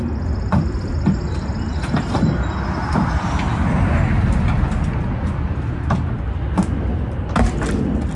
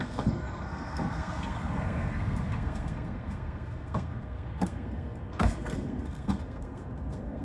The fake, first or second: second